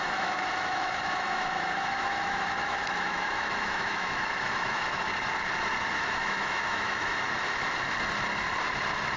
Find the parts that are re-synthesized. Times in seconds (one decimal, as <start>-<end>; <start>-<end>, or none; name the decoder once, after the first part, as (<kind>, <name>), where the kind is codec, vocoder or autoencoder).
0.0-5.1 (autoencoder, DAC-VAE); 6.0-7.1

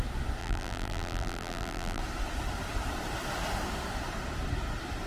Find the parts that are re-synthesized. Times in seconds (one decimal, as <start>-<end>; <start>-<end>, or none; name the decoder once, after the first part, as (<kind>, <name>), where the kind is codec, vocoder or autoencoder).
0.4-2.0 (vocoder, BigVGAN v2)

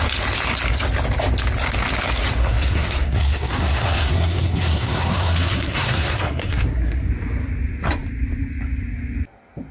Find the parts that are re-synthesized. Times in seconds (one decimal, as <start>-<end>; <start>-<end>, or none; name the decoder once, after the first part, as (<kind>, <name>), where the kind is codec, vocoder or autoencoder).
2.4-7.1 (codec, SNAC)

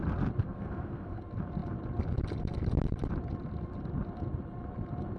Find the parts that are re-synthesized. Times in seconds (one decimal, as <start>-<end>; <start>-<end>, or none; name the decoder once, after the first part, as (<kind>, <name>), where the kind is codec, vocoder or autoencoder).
0.4-1.2 (codec, SNAC)

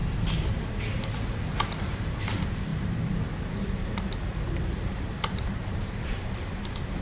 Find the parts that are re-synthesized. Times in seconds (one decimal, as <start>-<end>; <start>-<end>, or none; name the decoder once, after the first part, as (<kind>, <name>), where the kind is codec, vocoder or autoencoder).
2.2-7.0 (vocoder, BigVGAN v2)

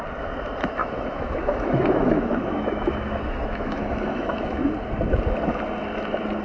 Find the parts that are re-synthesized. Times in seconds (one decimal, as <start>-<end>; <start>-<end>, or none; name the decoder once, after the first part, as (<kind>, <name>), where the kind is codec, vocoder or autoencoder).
0.8-4.6 (autoencoder, DAC-VAE)

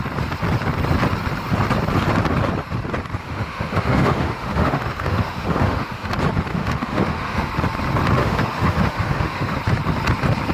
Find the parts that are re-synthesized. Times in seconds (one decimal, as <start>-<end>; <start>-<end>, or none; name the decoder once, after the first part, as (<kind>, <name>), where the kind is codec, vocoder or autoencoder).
3.2-6.1 (autoencoder, DAC-VAE); 6.5-7.5; 8.2-9.6

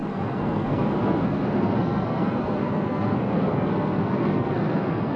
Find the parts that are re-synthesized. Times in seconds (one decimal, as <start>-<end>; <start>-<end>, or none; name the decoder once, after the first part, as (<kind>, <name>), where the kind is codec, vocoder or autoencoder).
0.0-5.2 (codec, SNAC)